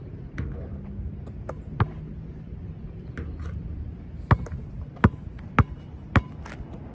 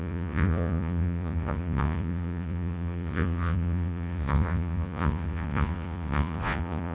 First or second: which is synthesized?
second